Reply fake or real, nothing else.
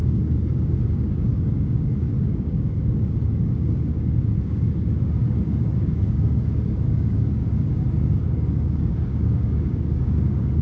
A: fake